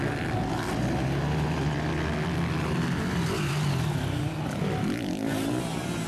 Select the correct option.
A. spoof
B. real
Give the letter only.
B